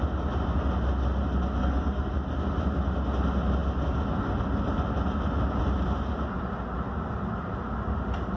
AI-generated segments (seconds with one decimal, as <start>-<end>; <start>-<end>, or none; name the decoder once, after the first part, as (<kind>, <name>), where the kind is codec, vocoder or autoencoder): 1.6-2.1 (codec, SNAC)